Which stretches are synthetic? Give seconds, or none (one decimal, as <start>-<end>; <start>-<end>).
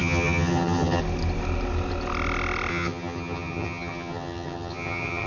0.0-1.0; 2.7-5.3